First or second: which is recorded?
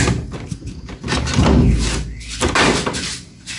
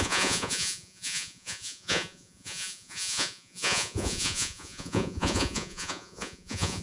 first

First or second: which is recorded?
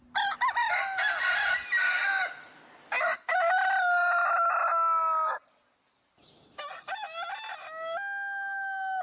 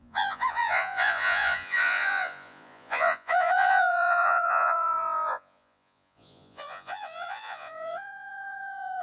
first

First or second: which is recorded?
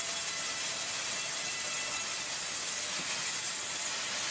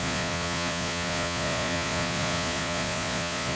first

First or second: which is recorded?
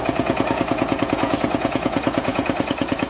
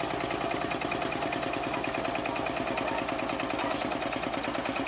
second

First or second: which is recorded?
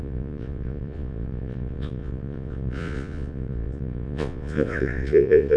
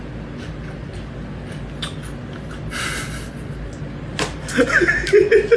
second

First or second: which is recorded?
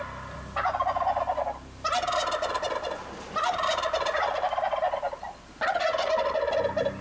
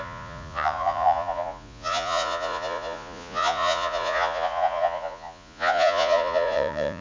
first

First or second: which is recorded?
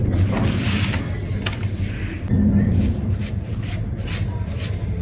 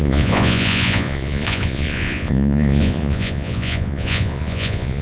first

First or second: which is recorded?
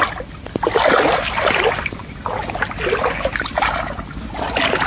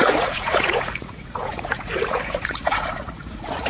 first